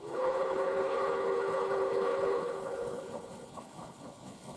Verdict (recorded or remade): remade